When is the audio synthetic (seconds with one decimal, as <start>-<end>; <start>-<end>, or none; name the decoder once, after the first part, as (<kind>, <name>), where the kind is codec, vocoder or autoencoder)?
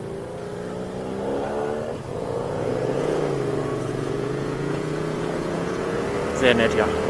2.1-3.2 (vocoder, Vocos); 3.7-6.0